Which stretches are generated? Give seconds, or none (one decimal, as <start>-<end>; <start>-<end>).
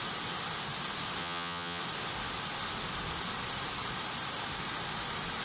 1.2-1.8